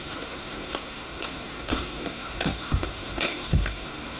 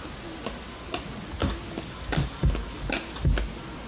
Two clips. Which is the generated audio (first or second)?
first